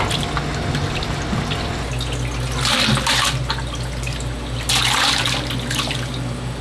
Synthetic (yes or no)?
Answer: no